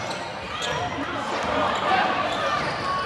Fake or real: real